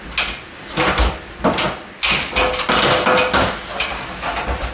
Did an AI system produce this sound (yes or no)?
no